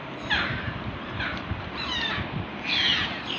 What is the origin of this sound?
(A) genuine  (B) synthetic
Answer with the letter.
B